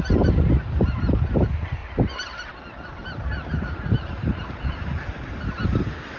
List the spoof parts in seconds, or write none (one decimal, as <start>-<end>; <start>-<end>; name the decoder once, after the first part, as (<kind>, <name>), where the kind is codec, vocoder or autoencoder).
0.0-1.8 (vocoder, BigVGAN v2); 2.5-4.2; 4.7-6.2